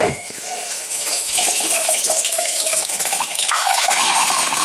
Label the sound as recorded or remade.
remade